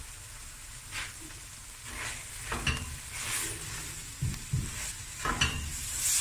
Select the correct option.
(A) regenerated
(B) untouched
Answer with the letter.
B